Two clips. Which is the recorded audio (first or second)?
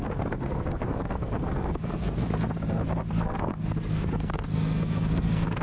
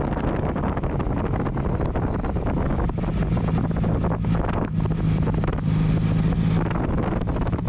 second